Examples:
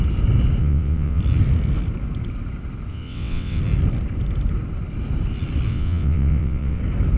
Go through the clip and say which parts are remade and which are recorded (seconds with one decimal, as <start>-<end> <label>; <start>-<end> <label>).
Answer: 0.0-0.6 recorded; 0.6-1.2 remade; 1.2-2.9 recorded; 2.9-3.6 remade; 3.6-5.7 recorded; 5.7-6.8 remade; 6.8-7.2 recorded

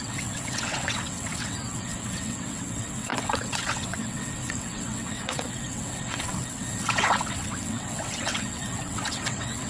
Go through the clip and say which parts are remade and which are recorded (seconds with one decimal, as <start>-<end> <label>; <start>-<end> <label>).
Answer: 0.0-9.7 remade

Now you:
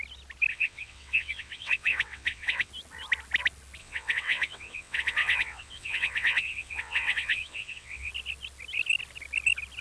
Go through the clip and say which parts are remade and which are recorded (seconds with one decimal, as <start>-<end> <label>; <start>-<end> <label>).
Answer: 0.0-0.5 recorded; 0.5-2.7 remade; 2.7-3.8 recorded; 3.8-8.1 remade; 8.1-9.8 recorded

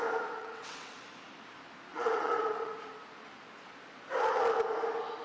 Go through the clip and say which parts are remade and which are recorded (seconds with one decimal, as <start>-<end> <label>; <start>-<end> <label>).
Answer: 0.0-0.4 recorded; 0.4-1.0 remade; 1.0-1.9 recorded; 1.9-2.7 remade; 2.7-5.2 recorded

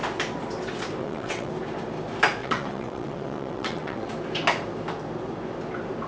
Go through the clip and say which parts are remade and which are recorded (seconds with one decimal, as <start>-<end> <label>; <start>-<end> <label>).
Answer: 0.0-1.0 recorded; 1.0-1.5 remade; 1.5-2.4 recorded; 2.4-4.1 remade; 4.1-6.1 recorded